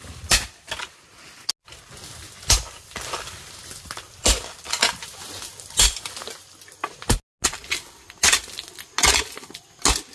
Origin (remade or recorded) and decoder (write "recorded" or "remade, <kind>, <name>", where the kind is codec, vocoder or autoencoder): recorded